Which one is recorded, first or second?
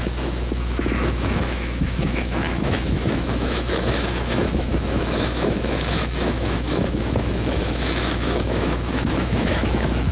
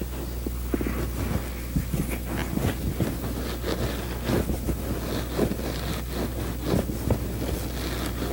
second